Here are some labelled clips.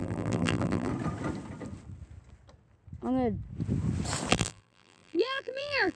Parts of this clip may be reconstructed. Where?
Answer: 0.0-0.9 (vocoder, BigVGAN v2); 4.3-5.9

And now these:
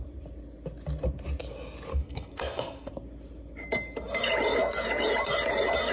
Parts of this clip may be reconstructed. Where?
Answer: 1.9-2.9 (codec, SNAC)

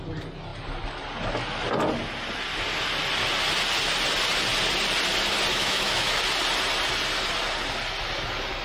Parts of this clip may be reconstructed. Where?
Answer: 5.5-6.2 (autoencoder, DAC-VAE)